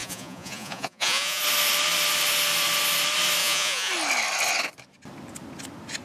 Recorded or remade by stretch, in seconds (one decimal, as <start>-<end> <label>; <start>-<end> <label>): 0.0-1.4 remade; 1.4-3.4 recorded; 3.4-3.9 remade; 3.9-6.0 recorded